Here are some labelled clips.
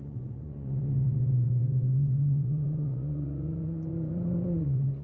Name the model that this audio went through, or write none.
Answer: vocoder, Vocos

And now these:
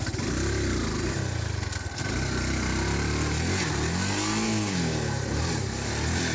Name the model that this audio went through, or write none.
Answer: none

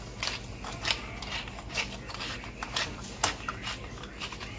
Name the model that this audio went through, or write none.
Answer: none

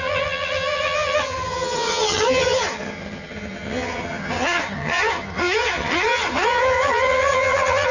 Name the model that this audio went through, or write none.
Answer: vocoder, HiFi-GAN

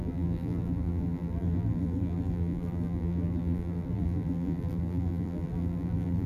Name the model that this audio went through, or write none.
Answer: vocoder, BigVGAN v2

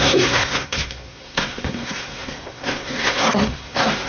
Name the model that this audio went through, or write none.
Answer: codec, SNAC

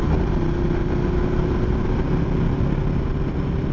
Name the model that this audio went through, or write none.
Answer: none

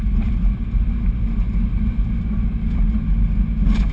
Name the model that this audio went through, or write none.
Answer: none